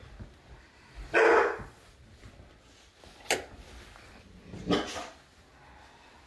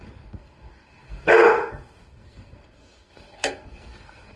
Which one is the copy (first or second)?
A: second